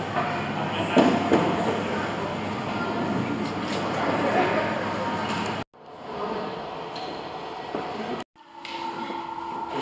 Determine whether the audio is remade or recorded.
recorded